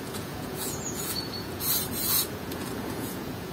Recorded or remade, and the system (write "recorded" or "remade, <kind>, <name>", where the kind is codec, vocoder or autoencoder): remade, vocoder, Vocos